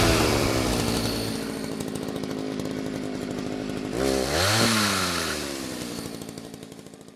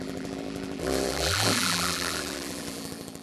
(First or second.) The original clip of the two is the first